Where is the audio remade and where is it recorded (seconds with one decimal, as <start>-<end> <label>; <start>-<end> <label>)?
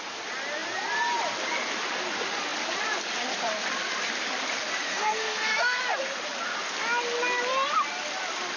0.0-4.9 recorded; 4.9-5.8 remade; 5.8-8.6 recorded